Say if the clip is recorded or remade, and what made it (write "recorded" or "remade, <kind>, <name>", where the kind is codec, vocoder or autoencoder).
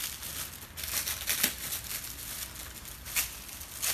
recorded